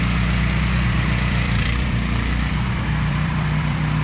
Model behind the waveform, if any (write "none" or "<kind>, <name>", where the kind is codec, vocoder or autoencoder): vocoder, BigVGAN v2